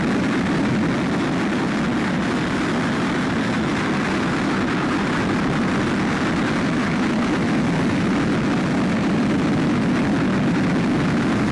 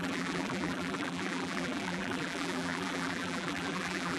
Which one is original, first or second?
first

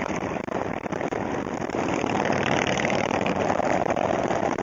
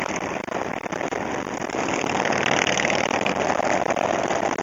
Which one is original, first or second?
second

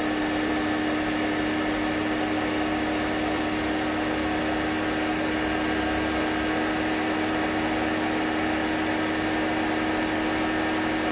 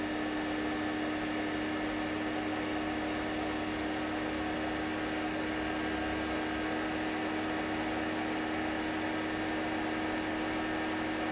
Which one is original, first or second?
second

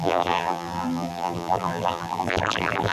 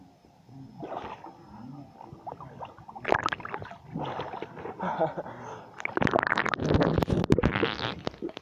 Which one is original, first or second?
second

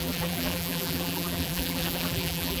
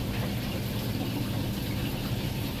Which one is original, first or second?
second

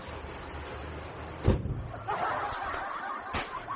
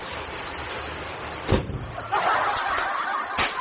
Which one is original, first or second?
first